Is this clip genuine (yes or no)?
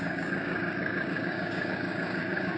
no